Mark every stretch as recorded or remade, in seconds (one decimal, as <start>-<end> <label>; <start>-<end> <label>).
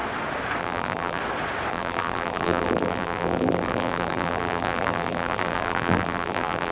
0.0-0.6 recorded; 0.6-1.2 remade; 1.2-1.7 recorded; 1.7-6.7 remade